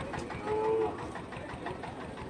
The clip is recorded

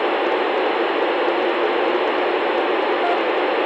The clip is recorded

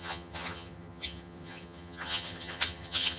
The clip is remade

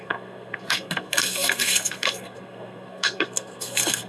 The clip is remade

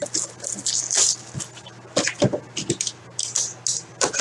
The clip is recorded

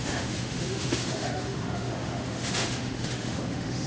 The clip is remade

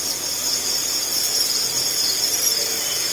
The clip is recorded